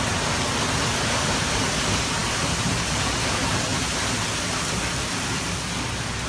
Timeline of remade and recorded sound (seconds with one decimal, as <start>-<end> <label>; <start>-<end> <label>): 0.0-6.3 recorded